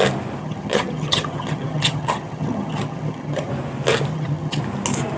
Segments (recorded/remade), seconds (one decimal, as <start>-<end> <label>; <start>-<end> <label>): 0.0-0.4 recorded; 0.4-3.5 remade; 3.5-4.1 recorded; 4.1-4.6 remade; 4.6-5.2 recorded